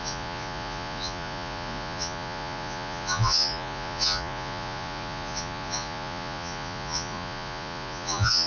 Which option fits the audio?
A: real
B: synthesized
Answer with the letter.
B